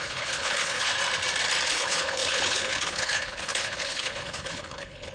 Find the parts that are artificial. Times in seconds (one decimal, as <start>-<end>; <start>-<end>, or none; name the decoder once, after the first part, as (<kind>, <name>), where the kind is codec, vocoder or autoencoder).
0.0-0.9 (codec, HILCodec); 1.7-5.1